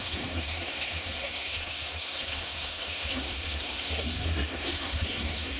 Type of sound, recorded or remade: remade